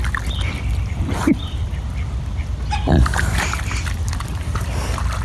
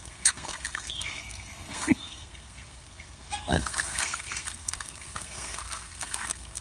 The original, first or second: first